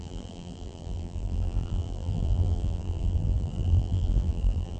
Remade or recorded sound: remade